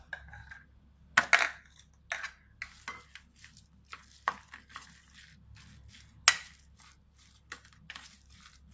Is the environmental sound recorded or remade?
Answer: recorded